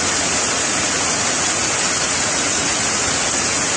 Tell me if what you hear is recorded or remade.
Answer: remade